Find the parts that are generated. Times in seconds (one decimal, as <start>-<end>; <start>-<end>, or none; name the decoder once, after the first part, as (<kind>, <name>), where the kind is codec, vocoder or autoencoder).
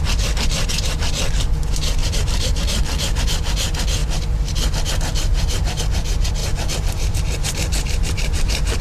2.0-3.2 (vocoder, BigVGAN v2); 4.0-5.8; 6.4-8.8